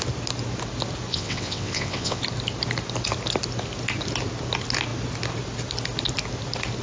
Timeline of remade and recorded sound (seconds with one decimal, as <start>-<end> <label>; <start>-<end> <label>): 0.0-1.1 recorded; 1.1-2.2 remade; 2.2-6.8 recorded